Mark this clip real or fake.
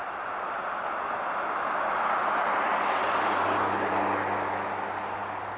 real